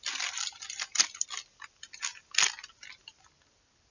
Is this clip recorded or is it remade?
recorded